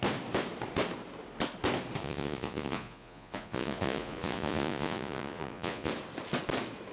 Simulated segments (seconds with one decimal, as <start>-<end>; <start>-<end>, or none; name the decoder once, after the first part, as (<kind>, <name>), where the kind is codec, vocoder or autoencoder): 2.0-5.9 (vocoder, Vocos)